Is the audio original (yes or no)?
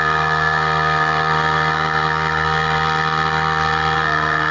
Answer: no